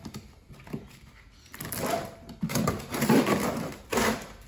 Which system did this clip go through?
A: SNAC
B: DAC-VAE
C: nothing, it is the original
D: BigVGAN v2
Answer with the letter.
D